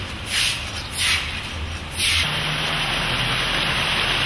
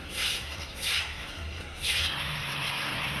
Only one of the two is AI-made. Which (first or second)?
second